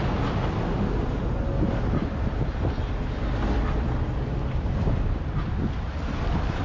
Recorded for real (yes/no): yes